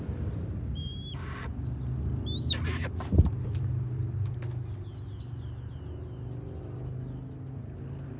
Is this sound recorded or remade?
recorded